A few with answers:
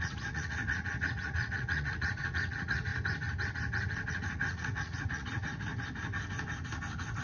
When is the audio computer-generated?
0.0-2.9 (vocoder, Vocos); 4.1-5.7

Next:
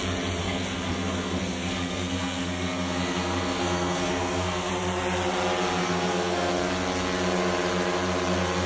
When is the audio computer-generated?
0.4-4.7 (codec, SNAC); 5.8-6.5

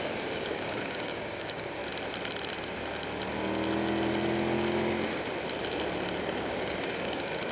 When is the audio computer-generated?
0.0-1.8 (codec, DAC); 6.2-7.5

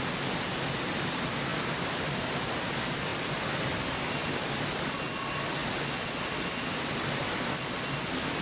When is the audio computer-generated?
1.5-2.2 (vocoder, BigVGAN v2)

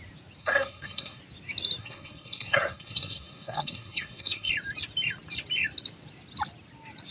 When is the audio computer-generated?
0.4-1.2 (codec, SNAC); 1.8-4.5

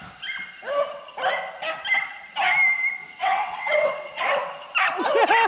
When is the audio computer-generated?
3.2-4.2 (vocoder, WaveNeXt)

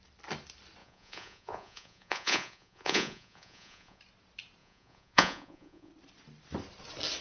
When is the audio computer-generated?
0.8-4.0 (vocoder, Vocos); 4.6-5.9

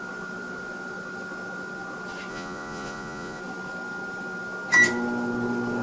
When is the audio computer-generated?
2.3-3.4 (vocoder, Vocos)